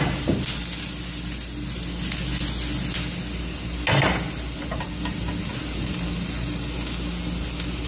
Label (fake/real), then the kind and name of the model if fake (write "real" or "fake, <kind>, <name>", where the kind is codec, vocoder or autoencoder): real